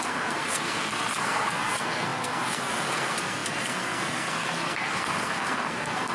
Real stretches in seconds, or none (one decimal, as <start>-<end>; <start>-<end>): none